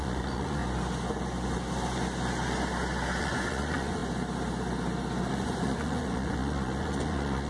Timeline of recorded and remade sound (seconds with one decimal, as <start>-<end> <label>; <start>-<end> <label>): 0.0-0.6 remade; 0.6-3.2 recorded; 3.2-4.0 remade; 4.0-5.3 recorded; 5.3-7.5 remade